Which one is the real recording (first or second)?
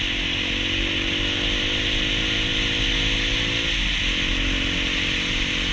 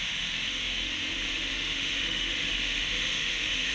first